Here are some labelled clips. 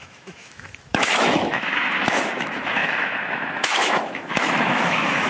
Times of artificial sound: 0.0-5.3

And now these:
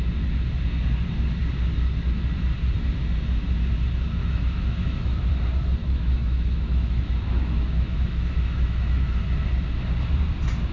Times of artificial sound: 4.2-5.3; 5.8-9.2